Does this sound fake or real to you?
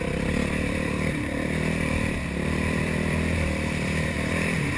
fake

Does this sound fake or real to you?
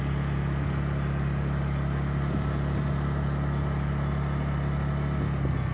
real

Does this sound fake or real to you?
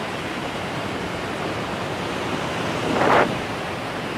fake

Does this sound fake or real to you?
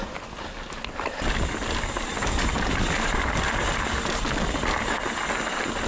real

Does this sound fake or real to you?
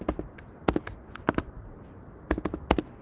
real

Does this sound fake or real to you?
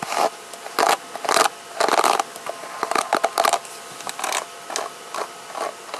real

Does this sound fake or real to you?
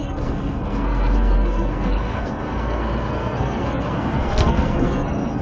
fake